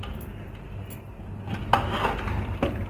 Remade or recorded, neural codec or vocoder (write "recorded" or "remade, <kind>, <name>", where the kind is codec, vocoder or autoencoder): recorded